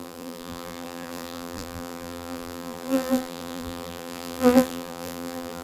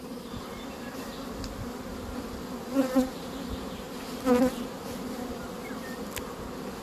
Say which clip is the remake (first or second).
first